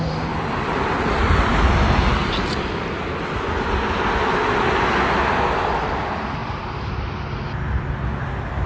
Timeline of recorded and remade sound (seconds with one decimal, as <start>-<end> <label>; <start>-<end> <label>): 0.0-8.7 recorded